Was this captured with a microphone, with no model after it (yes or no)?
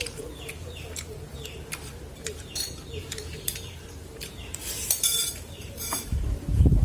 no